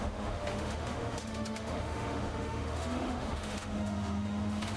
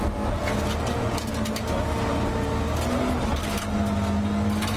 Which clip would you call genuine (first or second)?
second